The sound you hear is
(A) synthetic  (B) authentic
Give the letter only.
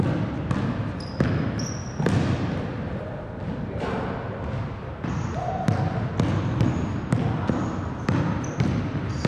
B